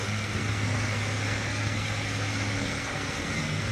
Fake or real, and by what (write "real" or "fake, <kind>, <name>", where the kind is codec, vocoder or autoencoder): fake, codec, SNAC